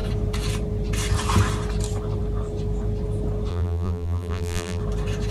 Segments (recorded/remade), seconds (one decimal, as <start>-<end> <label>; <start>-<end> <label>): 0.0-3.5 recorded; 3.5-4.8 remade; 4.8-5.3 recorded